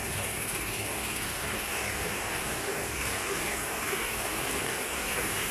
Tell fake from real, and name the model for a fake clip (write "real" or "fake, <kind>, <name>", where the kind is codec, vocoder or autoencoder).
fake, codec, DAC